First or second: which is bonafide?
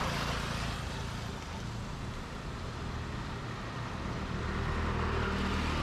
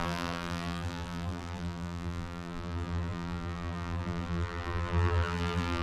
first